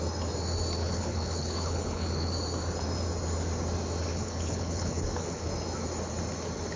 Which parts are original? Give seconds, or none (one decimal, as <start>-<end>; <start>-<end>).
0.0-0.8; 2.3-4.1; 5.5-6.8